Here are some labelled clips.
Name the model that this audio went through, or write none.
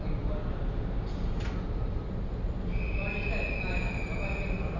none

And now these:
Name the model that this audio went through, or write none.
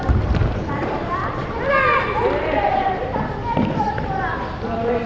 vocoder, BigVGAN v2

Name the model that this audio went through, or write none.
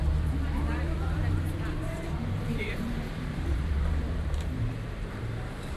vocoder, BigVGAN v2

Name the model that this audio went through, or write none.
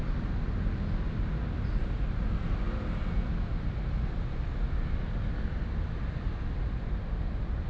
none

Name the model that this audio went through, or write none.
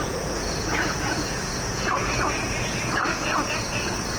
vocoder, Vocos